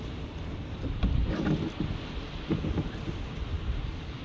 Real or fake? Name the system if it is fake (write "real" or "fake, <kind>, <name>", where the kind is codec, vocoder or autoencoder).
real